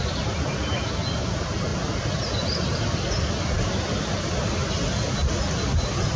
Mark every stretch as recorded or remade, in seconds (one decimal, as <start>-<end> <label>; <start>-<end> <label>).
0.0-6.2 recorded